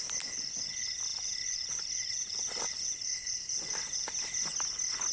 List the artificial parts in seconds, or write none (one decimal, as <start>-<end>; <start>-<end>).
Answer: 1.1-4.2